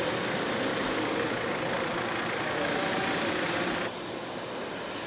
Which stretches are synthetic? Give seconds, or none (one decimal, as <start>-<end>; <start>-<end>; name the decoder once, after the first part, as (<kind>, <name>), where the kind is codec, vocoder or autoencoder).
none